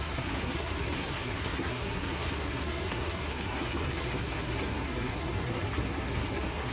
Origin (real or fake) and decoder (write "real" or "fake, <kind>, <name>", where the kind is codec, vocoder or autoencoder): fake, codec, SNAC